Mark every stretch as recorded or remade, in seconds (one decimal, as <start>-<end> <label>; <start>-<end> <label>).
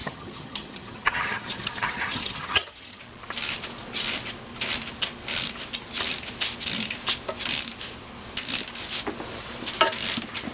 0.0-3.0 remade; 3.0-10.5 recorded